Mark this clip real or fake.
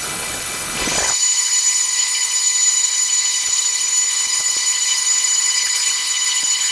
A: fake